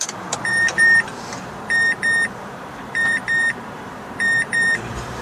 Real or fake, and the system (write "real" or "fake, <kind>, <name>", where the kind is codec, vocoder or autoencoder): fake, vocoder, BigVGAN v2